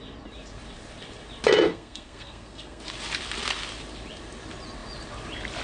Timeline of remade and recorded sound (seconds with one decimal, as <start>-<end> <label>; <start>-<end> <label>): 0.0-1.7 recorded; 1.7-2.8 remade; 2.8-5.6 recorded